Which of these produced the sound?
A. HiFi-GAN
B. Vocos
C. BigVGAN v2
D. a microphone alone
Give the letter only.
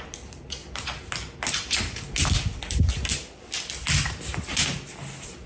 D